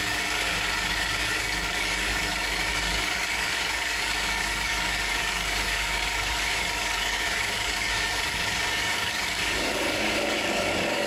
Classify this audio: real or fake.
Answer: fake